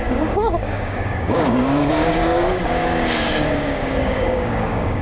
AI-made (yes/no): yes